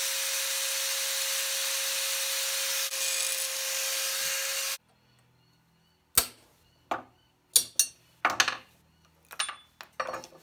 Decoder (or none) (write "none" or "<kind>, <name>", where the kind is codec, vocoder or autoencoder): none